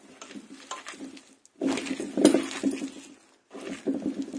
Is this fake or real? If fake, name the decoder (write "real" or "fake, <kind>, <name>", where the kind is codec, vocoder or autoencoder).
real